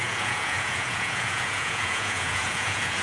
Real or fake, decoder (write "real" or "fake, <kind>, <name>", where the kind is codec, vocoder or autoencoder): fake, vocoder, Vocos